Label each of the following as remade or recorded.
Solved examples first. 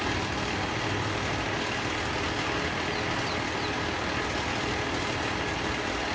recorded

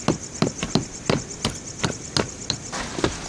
recorded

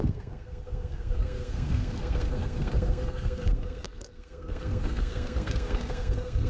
remade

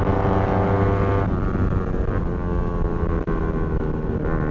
recorded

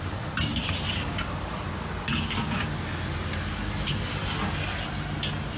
recorded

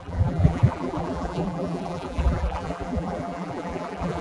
remade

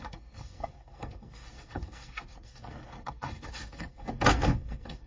remade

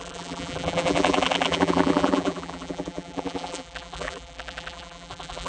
remade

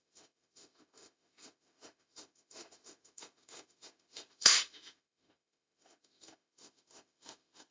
remade